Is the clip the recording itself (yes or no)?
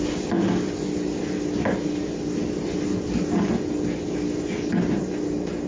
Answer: yes